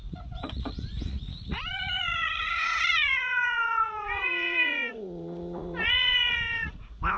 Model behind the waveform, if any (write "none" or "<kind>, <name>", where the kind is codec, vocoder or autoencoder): vocoder, Vocos